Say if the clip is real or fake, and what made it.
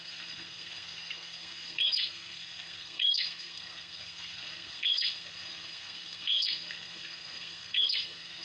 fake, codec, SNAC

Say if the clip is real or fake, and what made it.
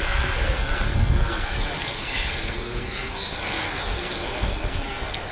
fake, codec, SNAC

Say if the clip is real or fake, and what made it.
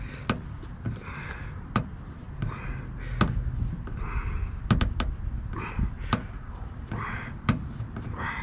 real